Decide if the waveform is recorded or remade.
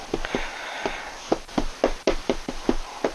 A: recorded